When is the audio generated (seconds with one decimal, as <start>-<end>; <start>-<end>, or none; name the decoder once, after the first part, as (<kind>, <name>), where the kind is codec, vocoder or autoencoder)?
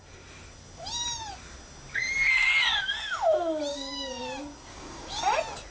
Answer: 3.7-4.2 (codec, DAC); 4.7-5.2